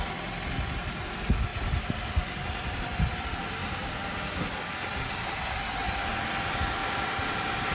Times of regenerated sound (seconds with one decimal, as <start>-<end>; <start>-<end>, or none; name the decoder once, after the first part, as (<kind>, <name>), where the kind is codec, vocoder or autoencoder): 1.5-3.2 (vocoder, BigVGAN v2); 3.6-4.2; 4.8-5.8; 6.8-7.7